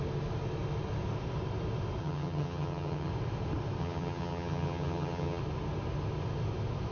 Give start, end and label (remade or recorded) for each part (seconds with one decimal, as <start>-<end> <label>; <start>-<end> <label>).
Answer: 0.0-2.0 recorded; 2.0-3.1 remade; 3.1-3.8 recorded; 3.8-5.4 remade; 5.4-6.9 recorded